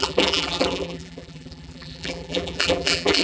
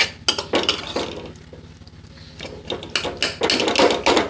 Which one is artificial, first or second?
first